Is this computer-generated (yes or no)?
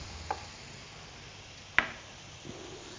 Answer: no